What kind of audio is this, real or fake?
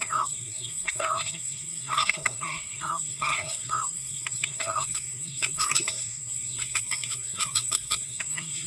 fake